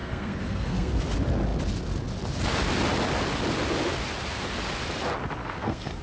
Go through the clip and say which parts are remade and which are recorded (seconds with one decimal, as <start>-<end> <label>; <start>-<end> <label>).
0.0-1.0 remade; 1.0-5.4 recorded; 5.4-6.0 remade